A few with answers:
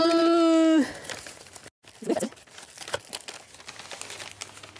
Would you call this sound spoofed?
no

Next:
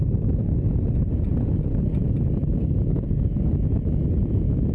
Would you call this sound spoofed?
no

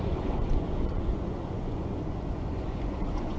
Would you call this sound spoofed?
yes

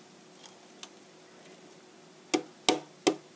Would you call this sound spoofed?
no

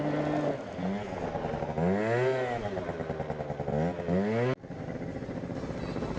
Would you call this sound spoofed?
no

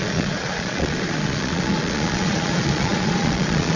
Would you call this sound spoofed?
yes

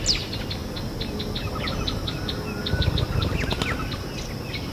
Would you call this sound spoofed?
no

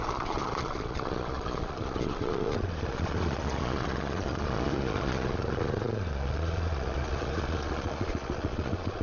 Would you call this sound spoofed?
yes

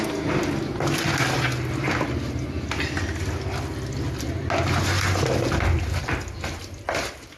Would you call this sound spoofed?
no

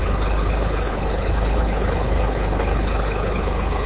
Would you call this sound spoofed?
yes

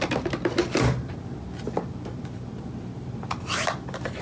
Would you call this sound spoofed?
no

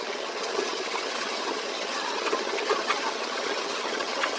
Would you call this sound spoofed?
yes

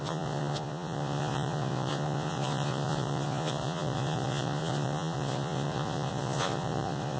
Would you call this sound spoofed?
yes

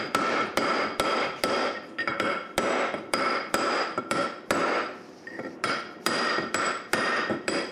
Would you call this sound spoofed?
yes